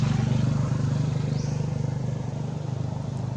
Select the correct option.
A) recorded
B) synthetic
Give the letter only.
B